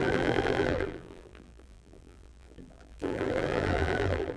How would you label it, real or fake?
fake